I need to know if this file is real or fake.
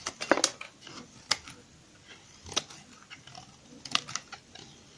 real